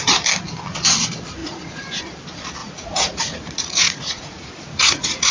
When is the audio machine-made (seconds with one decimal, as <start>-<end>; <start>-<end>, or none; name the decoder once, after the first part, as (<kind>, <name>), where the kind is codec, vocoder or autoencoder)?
1.4-2.0 (vocoder, Vocos); 2.6-5.3